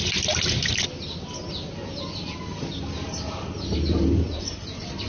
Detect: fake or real real